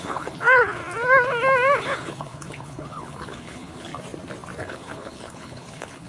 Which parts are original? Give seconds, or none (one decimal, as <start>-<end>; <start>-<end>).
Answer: 0.8-1.8; 3.9-4.6